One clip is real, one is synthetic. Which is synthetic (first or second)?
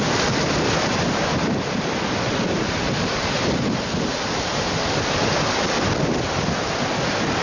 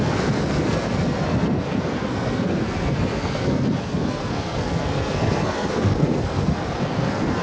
second